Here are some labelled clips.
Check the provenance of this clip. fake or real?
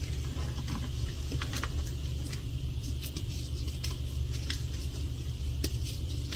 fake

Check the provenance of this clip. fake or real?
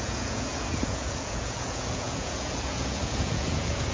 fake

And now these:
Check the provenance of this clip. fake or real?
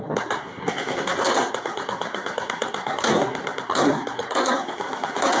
fake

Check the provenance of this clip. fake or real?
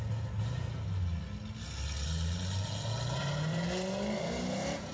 real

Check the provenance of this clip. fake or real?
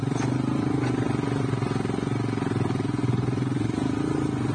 real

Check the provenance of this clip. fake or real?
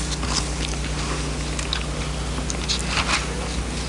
real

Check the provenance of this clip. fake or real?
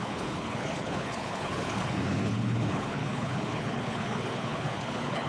fake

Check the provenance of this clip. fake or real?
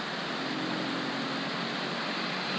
real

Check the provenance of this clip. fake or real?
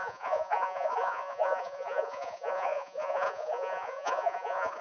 fake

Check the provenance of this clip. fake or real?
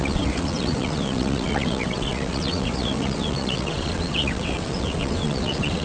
fake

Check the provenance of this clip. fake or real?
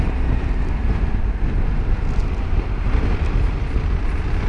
real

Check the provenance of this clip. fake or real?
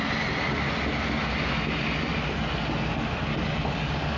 real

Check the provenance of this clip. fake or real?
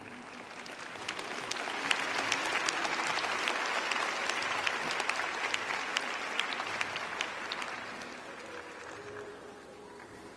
real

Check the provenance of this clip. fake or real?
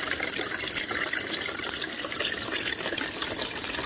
real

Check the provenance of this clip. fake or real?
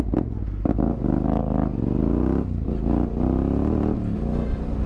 real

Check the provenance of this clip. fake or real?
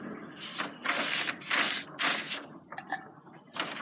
real